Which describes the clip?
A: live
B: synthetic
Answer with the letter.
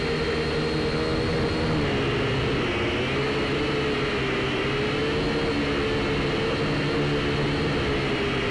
A